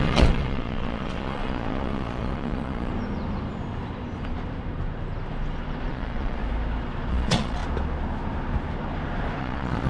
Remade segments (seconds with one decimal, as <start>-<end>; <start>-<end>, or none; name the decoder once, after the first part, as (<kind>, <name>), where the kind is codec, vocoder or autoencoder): 0.0-2.9 (vocoder, Vocos); 5.9-6.4; 7.1-7.6; 9.4-9.9